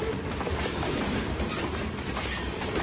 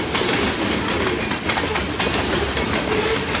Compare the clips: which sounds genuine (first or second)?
second